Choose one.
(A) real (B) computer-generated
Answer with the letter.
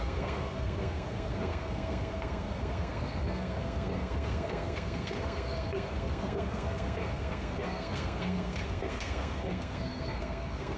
B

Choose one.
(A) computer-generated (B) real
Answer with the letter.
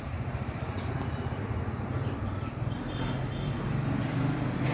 A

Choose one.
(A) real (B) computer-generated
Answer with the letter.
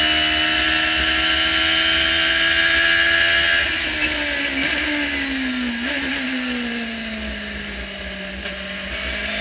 A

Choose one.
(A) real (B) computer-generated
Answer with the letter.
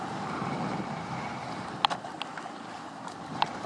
B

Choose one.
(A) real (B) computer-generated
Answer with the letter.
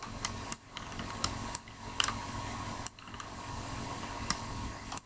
B